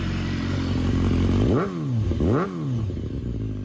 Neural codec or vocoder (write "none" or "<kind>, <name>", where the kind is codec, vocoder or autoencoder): none